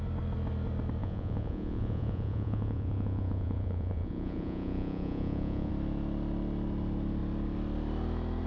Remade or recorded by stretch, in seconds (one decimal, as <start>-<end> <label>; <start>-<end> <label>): 0.0-1.0 recorded; 1.0-5.7 remade; 5.7-8.5 recorded